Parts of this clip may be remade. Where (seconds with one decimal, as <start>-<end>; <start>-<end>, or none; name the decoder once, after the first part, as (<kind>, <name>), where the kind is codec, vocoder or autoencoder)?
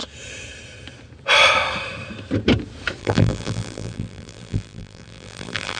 3.0-5.8 (vocoder, BigVGAN v2)